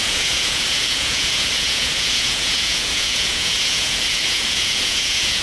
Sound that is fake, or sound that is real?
fake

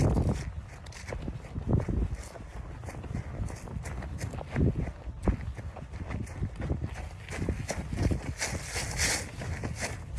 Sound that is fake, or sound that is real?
real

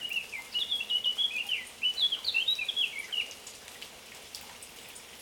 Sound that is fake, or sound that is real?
real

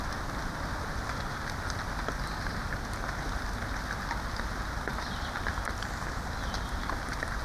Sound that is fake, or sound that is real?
real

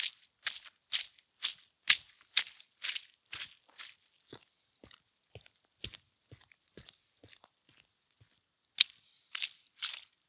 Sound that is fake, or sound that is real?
real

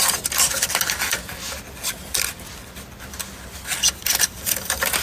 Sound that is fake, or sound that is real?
real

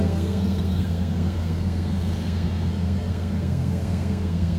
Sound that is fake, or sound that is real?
fake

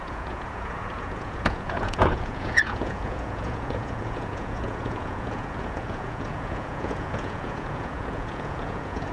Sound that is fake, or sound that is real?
fake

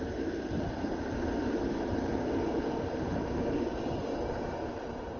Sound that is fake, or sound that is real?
fake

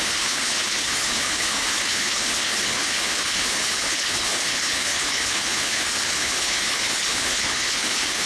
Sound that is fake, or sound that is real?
fake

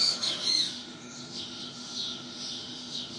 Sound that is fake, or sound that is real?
fake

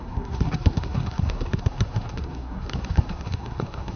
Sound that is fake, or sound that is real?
fake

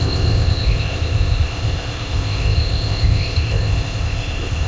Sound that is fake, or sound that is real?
fake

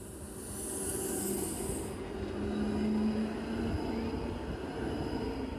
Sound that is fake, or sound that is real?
real